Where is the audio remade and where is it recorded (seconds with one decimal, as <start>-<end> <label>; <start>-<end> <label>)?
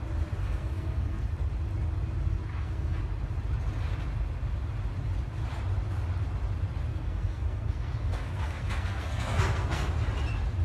0.0-0.4 recorded; 0.4-1.3 remade; 1.3-2.5 recorded; 2.5-3.0 remade; 3.0-6.9 recorded; 6.9-9.9 remade; 9.9-10.6 recorded